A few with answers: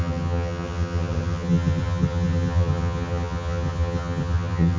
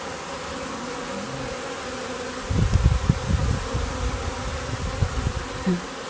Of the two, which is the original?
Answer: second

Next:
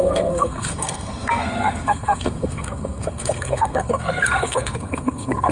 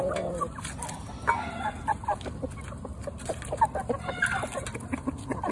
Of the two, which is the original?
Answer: second